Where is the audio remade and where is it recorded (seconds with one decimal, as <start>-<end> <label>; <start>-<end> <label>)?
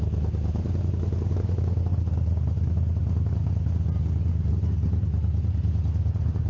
0.0-6.5 recorded